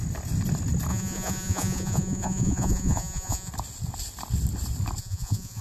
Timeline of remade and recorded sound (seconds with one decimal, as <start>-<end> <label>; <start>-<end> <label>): 0.0-0.9 recorded; 0.9-3.5 remade; 3.5-5.0 recorded; 5.0-5.6 remade

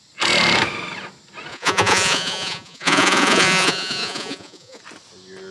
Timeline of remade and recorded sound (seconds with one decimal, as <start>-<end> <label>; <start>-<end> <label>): 0.0-1.5 recorded; 1.5-4.8 remade; 4.8-5.5 recorded

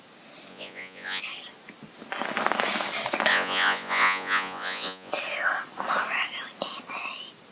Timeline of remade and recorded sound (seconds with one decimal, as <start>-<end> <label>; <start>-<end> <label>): 0.0-0.5 recorded; 0.5-1.2 remade; 1.2-3.3 recorded; 3.3-5.1 remade; 5.1-7.5 recorded